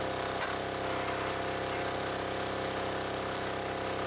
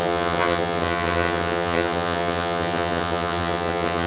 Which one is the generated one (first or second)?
second